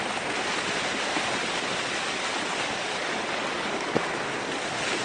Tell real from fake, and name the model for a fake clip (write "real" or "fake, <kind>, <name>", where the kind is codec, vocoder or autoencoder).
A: fake, vocoder, BigVGAN v2